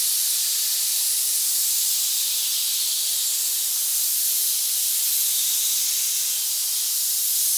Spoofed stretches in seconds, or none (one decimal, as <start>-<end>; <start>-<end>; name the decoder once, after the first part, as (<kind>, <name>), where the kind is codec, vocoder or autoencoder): 0.0-4.4 (vocoder, BigVGAN v2)